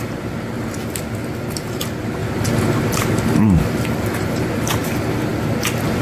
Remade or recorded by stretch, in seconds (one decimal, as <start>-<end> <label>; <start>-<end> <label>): 0.0-0.8 remade; 0.8-1.7 recorded; 1.7-5.3 remade; 5.3-6.0 recorded